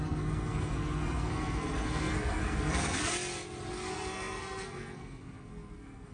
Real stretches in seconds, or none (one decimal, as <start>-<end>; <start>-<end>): 3.1-3.9